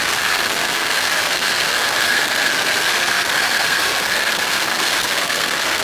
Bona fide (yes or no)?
no